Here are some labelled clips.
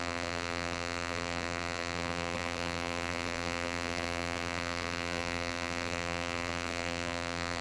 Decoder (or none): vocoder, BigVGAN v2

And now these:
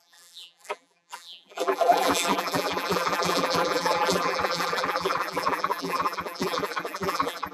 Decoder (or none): vocoder, BigVGAN v2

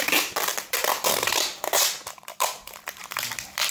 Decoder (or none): vocoder, BigVGAN v2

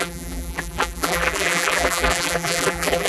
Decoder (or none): vocoder, BigVGAN v2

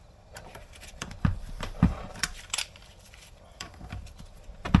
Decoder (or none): vocoder, BigVGAN v2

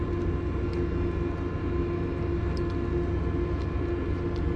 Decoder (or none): none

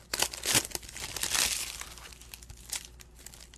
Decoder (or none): none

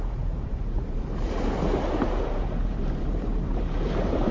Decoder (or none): vocoder, BigVGAN v2